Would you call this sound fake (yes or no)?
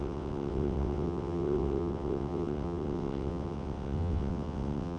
yes